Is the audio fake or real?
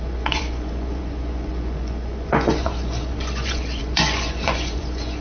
fake